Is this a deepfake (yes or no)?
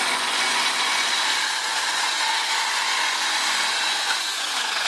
yes